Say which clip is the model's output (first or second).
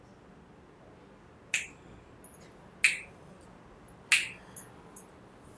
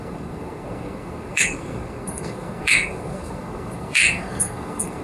second